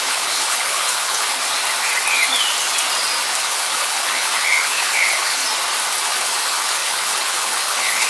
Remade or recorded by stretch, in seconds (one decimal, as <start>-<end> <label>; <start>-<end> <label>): 0.0-1.4 remade; 1.4-3.4 recorded; 3.4-5.4 remade; 5.4-6.0 recorded; 6.0-8.1 remade